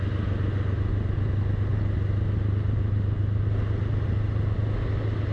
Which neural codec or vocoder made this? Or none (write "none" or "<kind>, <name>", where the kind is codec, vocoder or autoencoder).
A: none